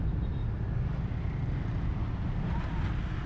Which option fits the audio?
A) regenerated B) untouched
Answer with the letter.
B